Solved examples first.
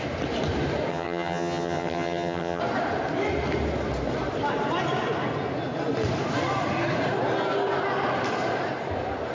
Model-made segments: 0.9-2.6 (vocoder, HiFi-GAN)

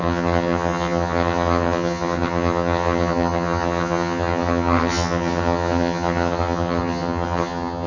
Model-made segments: 0.0-7.9 (vocoder, HiFi-GAN)

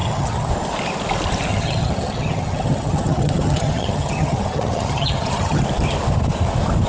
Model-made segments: 0.0-0.5 (vocoder, HiFi-GAN); 1.5-5.6